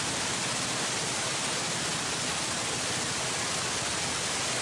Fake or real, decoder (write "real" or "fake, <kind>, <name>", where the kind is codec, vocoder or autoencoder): real